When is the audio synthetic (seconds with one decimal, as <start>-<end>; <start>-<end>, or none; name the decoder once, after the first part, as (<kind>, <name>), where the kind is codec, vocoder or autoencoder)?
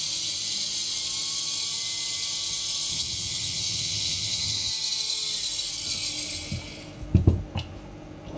2.9-4.7 (vocoder, HiFi-GAN)